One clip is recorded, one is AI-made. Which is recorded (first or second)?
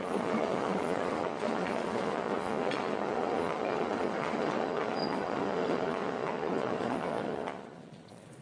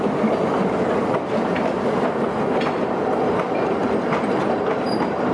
second